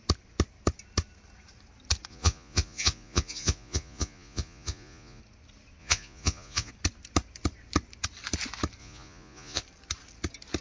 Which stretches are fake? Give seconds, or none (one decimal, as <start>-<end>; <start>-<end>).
2.1-5.2; 5.8-6.7; 8.8-9.6